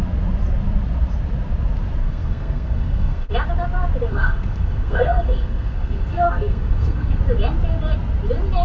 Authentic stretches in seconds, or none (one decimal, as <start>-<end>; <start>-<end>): 0.0-2.0; 3.3-4.1; 7.2-8.6